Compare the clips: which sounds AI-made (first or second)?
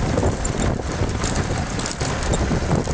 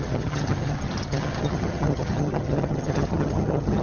second